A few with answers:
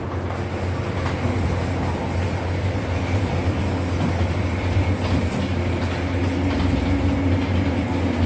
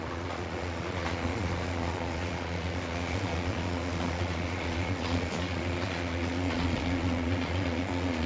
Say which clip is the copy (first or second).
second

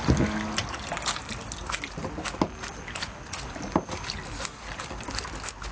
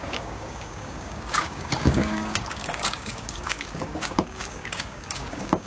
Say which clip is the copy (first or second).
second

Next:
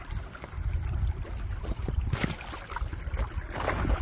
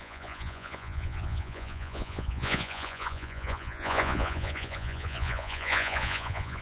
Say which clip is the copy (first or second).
second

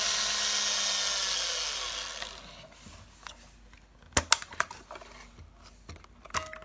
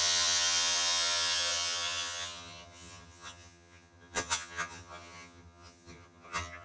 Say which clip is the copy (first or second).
second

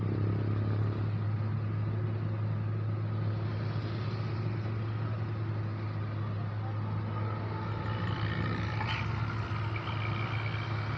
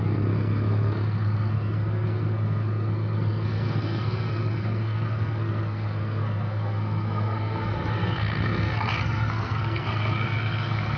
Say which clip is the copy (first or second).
second